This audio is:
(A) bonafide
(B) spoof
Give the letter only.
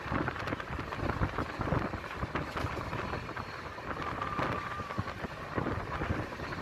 A